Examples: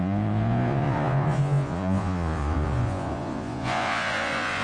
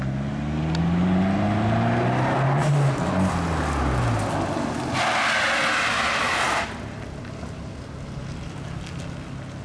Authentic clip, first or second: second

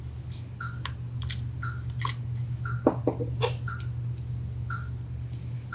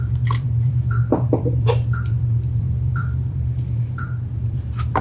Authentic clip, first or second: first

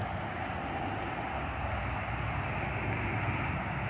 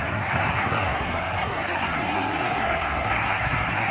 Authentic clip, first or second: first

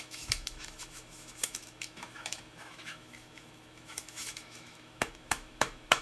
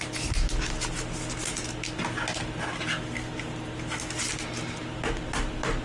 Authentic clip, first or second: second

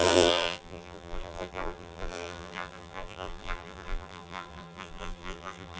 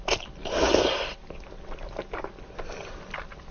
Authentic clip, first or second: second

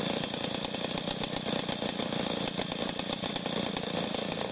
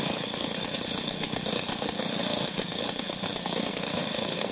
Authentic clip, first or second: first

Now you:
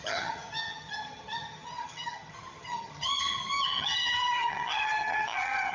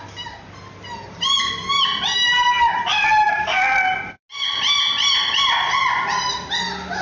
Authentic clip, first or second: second